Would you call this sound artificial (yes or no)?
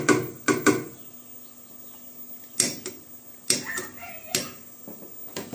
no